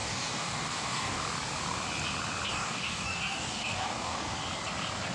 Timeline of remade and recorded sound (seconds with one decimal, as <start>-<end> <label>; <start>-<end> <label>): 0.0-1.2 remade; 1.2-2.5 recorded; 2.5-4.3 remade; 4.3-5.1 recorded